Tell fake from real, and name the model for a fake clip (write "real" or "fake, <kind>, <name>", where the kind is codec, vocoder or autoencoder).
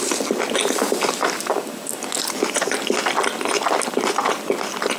real